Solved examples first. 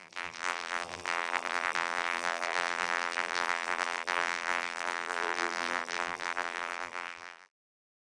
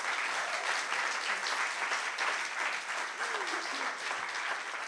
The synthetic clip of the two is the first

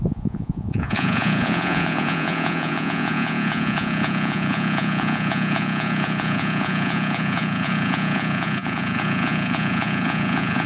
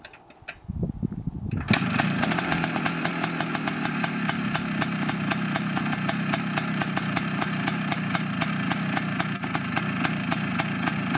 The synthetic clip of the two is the first